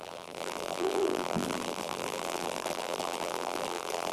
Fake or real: fake